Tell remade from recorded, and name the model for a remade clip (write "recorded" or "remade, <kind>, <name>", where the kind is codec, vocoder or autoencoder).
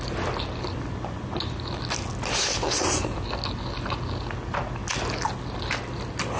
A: recorded